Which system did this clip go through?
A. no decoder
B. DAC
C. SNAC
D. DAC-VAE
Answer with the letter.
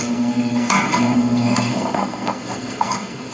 C